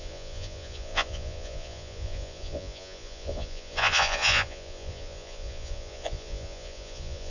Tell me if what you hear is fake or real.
fake